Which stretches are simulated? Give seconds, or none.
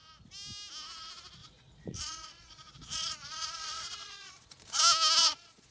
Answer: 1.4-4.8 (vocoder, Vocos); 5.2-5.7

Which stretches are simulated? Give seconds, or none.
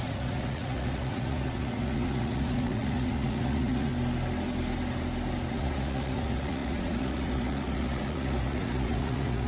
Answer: 0.0-3.9 (vocoder, Vocos); 5.5-9.5